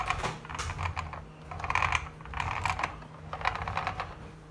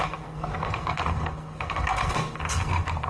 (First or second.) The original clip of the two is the first